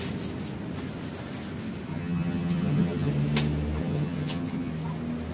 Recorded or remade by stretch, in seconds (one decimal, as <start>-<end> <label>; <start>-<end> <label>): 0.0-1.9 recorded; 1.9-3.1 remade; 3.1-3.8 recorded; 3.8-4.7 remade; 4.7-5.3 recorded